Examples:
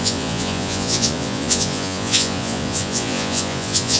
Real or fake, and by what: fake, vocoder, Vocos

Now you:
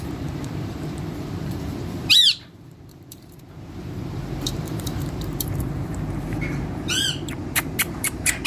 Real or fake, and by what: fake, vocoder, BigVGAN v2